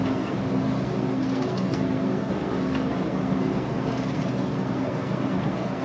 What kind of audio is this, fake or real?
fake